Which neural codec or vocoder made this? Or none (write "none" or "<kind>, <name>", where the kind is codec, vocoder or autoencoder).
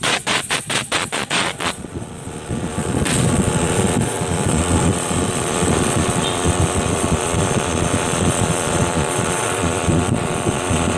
vocoder, Vocos